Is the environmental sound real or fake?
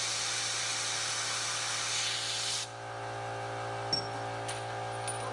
real